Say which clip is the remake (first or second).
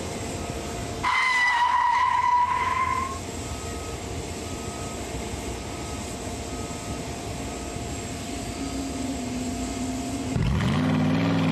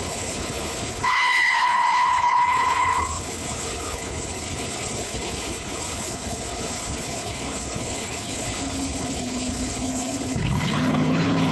second